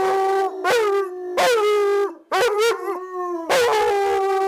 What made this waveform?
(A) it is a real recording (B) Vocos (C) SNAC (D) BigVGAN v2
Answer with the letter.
A